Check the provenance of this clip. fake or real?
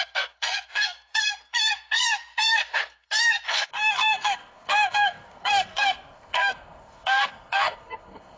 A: fake